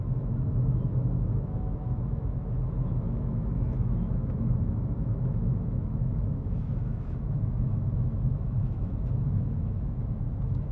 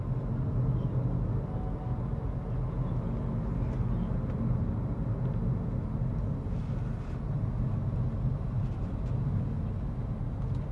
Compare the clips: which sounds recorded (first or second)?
second